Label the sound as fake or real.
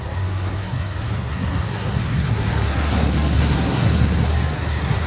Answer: fake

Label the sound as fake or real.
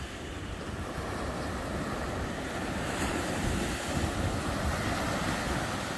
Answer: real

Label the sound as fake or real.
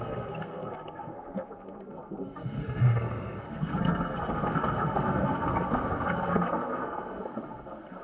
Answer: fake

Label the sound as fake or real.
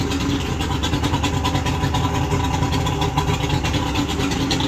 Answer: real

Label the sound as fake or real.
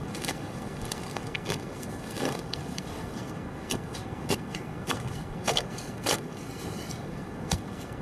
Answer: fake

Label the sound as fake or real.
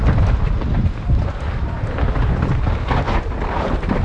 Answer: real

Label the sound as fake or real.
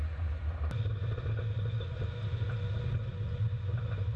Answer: real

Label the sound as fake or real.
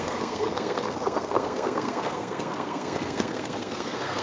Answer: fake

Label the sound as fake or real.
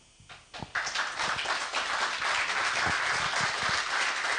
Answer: real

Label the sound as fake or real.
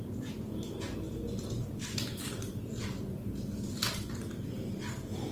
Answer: real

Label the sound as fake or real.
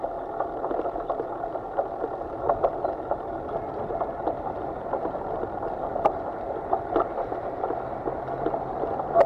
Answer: real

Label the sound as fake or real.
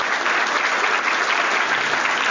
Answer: real